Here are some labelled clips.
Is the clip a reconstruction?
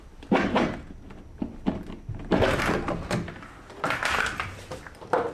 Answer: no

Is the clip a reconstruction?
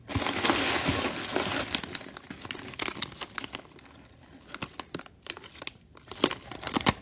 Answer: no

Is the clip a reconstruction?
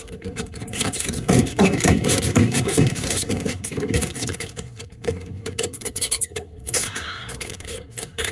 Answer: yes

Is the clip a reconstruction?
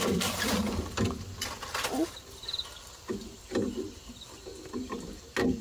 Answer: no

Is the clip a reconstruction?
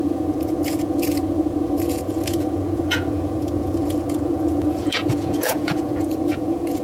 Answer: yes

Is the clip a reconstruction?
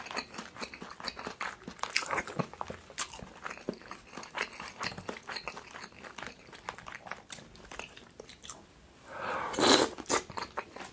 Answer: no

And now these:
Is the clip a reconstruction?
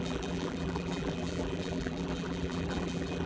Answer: yes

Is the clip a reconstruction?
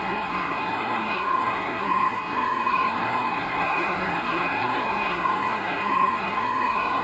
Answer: yes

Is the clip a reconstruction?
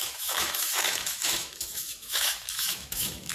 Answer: yes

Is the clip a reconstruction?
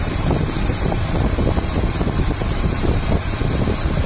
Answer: yes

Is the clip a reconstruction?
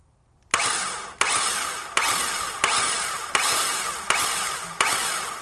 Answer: no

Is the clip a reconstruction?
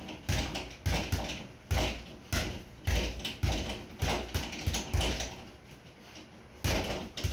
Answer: no